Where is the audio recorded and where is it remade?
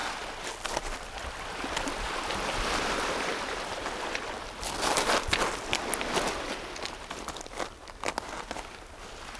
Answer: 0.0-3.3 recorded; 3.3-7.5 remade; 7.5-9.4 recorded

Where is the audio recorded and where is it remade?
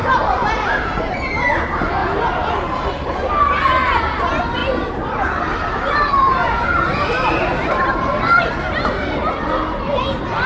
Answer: 0.0-1.5 remade; 1.5-2.0 recorded; 2.0-2.5 remade; 2.5-4.6 recorded; 4.6-9.3 remade; 9.3-10.5 recorded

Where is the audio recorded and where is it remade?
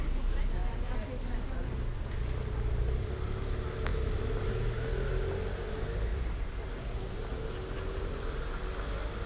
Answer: 0.0-3.9 recorded; 3.9-4.5 remade; 4.5-6.1 recorded; 6.1-7.1 remade; 7.1-9.3 recorded